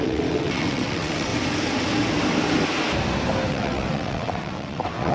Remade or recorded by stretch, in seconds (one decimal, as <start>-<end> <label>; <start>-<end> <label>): 0.0-1.3 remade; 1.3-3.5 recorded; 3.5-5.1 remade